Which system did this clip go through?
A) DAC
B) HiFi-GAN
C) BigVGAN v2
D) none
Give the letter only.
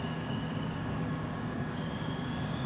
A